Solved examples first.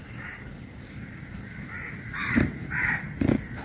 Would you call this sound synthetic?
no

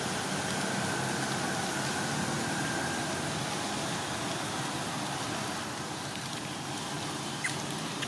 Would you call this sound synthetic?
no